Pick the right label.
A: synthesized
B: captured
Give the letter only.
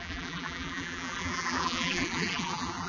A